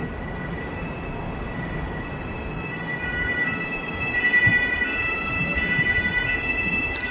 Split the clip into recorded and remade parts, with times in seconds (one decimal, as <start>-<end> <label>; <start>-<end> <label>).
0.0-7.1 recorded